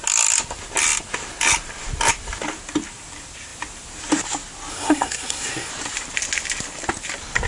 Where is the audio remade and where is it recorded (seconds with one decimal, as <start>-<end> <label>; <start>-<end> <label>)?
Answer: 0.0-4.7 recorded; 4.7-5.7 remade; 5.7-7.5 recorded